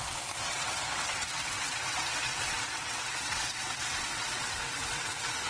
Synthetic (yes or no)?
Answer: yes